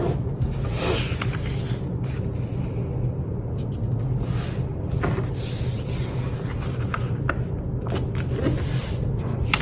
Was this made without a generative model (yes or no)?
yes